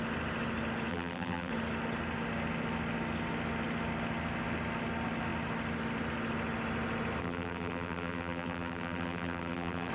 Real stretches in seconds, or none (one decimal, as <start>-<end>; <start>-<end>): 0.0-0.9; 1.5-7.2